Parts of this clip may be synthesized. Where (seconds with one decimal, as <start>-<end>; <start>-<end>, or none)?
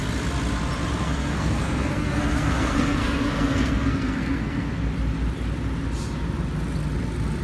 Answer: 1.0-4.7